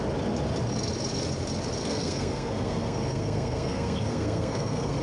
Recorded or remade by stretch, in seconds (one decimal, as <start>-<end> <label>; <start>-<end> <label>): 0.0-1.8 recorded; 1.8-5.0 remade